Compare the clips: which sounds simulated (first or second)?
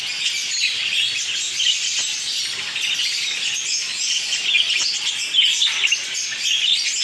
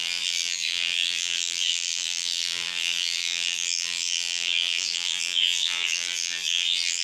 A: second